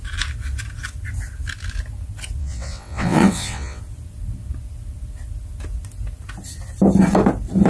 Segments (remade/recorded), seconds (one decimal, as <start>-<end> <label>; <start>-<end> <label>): 0.0-2.4 recorded; 2.4-3.8 remade; 3.8-7.7 recorded